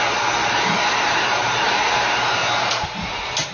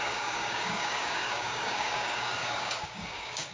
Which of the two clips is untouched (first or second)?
first